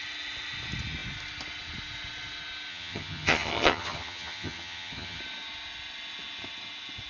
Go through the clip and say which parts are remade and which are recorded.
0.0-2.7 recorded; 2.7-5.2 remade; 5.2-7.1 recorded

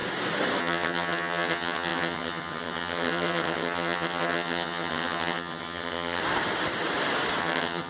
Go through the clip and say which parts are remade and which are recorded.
0.0-0.6 recorded; 0.6-6.2 remade; 6.2-7.4 recorded; 7.4-7.9 remade

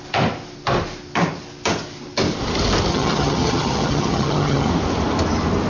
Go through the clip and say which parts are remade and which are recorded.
0.0-2.9 recorded; 2.9-4.7 remade; 4.7-5.7 recorded

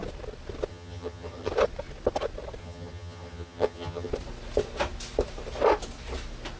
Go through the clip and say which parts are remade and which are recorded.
0.0-0.7 recorded; 0.7-1.5 remade; 1.5-2.6 recorded; 2.6-4.1 remade; 4.1-6.6 recorded